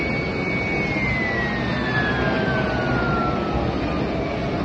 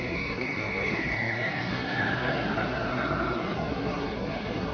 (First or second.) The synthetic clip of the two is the second